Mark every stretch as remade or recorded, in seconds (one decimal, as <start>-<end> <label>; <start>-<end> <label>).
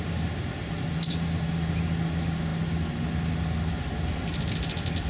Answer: 0.0-5.1 recorded